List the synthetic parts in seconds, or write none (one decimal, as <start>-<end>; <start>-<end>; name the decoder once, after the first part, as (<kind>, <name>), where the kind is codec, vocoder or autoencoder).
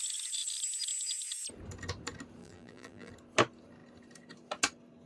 2.4-3.1 (vocoder, BigVGAN v2)